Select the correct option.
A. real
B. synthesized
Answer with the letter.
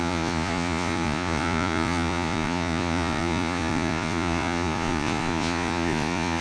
B